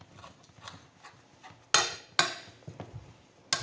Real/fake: real